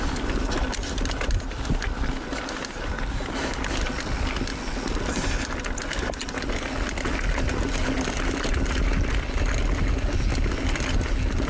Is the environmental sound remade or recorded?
recorded